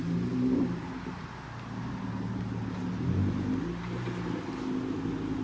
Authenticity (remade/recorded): recorded